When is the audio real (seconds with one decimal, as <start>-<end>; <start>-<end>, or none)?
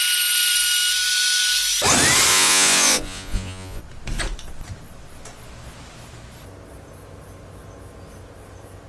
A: 0.0-2.3; 3.8-8.9